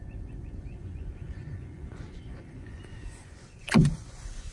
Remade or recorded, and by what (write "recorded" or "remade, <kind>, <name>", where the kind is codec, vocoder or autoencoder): remade, vocoder, Vocos